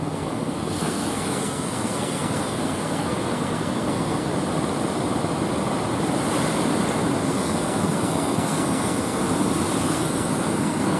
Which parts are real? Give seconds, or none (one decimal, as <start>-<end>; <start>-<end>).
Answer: 4.3-7.2; 9.2-9.8